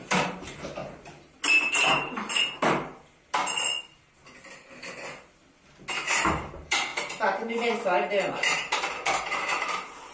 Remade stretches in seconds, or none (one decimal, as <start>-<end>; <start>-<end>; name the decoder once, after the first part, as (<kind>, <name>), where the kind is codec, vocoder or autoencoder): 0.0-0.8 (vocoder, BigVGAN v2); 1.6-3.4; 6.5-6.9; 8.3-10.1